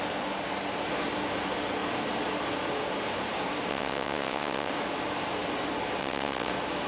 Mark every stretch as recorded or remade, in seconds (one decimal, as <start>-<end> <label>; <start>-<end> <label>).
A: 0.0-3.7 recorded; 3.7-4.7 remade; 4.7-6.0 recorded; 6.0-6.5 remade; 6.5-6.9 recorded